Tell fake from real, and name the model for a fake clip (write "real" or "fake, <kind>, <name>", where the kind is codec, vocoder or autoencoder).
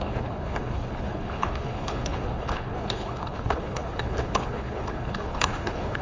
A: fake, codec, HILCodec